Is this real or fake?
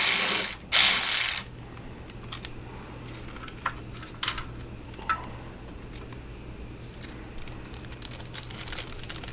real